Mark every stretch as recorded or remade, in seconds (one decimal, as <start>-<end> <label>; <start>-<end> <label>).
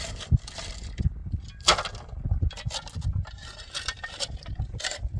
0.0-1.2 remade; 1.2-3.1 recorded; 3.1-5.2 remade